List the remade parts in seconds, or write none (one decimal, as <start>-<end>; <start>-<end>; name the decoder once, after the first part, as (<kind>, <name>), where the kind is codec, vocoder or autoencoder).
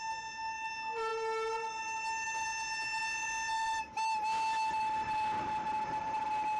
none